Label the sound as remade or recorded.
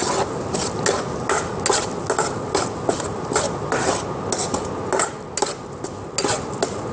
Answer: recorded